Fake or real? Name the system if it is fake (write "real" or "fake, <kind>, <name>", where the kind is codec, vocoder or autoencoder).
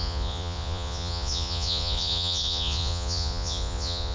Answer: fake, vocoder, Vocos